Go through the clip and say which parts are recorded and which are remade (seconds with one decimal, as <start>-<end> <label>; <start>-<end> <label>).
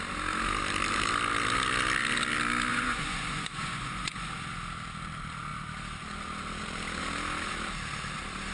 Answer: 0.0-2.7 recorded; 2.7-4.3 remade; 4.3-8.5 recorded